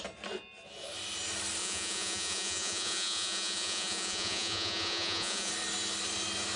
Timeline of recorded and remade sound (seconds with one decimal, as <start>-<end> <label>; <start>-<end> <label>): 0.0-1.6 recorded; 1.6-5.5 remade; 5.5-6.6 recorded